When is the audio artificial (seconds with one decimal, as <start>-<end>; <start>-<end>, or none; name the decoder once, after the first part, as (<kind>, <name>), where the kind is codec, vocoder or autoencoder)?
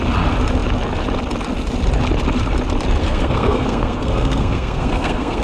3.0-5.4 (codec, SNAC)